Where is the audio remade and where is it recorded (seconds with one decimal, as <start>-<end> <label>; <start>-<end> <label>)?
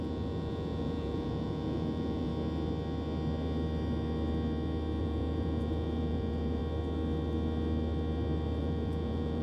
0.0-2.3 remade; 2.3-5.0 recorded; 5.0-6.6 remade; 6.6-8.6 recorded; 8.6-9.4 remade